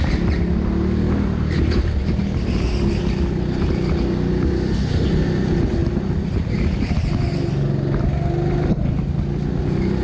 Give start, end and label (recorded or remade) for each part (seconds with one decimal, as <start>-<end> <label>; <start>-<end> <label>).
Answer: 0.0-10.0 recorded